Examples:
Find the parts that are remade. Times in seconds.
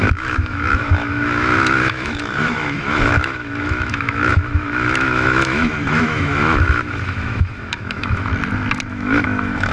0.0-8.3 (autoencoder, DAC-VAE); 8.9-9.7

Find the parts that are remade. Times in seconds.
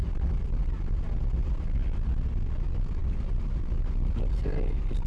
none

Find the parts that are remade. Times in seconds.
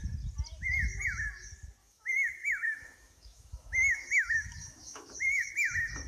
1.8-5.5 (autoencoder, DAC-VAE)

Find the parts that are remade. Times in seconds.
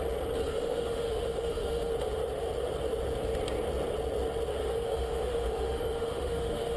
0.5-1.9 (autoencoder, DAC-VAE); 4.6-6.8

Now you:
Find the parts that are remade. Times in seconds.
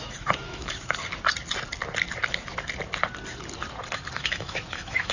0.0-1.0 (autoencoder, DAC-VAE); 4.1-5.1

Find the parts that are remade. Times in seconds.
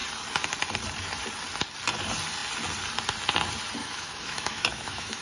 3.8-5.2 (autoencoder, DAC-VAE)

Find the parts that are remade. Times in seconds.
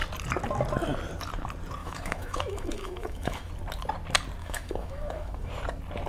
1.8-3.5 (autoencoder, DAC-VAE); 4.4-5.5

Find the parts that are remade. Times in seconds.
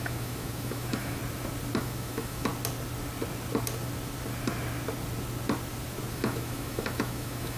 0.0-1.2 (autoencoder, DAC-VAE); 1.8-2.5; 6.1-7.6